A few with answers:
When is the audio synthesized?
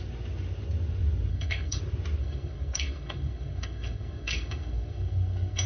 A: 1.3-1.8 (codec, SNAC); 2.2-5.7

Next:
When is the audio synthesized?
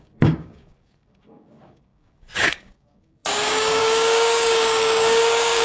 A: 0.0-5.6 (codec, DAC)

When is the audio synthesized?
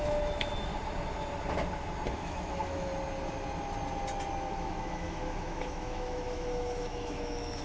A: 0.0-0.7 (autoencoder, DAC-VAE); 2.1-2.9; 4.5-7.6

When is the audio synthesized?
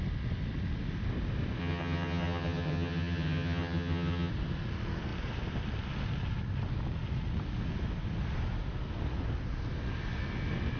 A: 1.6-4.3 (vocoder, HiFi-GAN)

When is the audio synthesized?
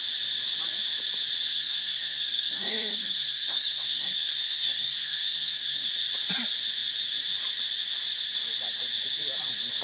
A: 1.5-5.9 (codec, SNAC)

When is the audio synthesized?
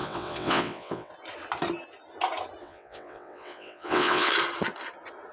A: 0.0-1.1 (vocoder, WaveNeXt); 2.6-4.3